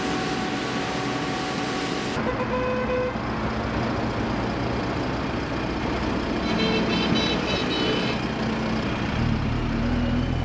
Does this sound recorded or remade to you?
recorded